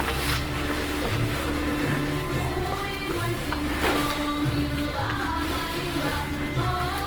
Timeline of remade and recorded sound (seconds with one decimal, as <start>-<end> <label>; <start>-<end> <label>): 0.0-6.1 remade; 6.1-7.1 recorded

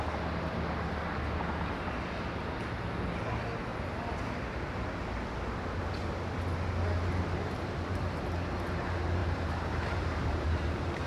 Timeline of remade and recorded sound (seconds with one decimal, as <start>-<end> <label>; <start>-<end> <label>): 0.0-9.2 recorded; 9.2-11.1 remade

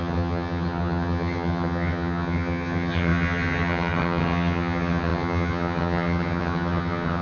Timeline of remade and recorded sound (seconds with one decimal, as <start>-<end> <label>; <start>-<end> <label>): 0.0-7.2 remade

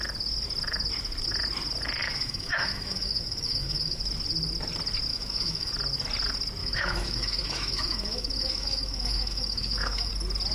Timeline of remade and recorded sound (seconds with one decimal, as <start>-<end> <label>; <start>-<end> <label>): 0.0-2.0 recorded; 2.0-4.0 remade; 4.0-5.1 recorded; 5.1-5.7 remade; 5.7-6.6 recorded; 6.6-10.1 remade; 10.1-10.5 recorded

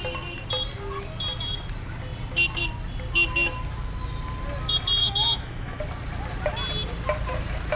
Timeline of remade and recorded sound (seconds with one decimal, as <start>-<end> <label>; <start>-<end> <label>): 0.0-5.0 recorded; 5.0-5.8 remade; 5.8-7.8 recorded

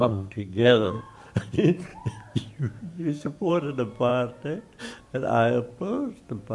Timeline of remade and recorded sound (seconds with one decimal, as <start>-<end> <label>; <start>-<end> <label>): 0.0-1.0 remade; 1.0-2.9 recorded; 2.9-3.5 remade; 3.5-6.5 recorded